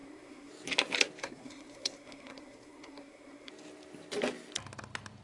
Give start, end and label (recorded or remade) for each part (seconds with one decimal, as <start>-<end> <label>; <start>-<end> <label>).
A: 0.0-0.5 remade; 0.5-1.2 recorded; 1.2-3.5 remade; 3.5-5.2 recorded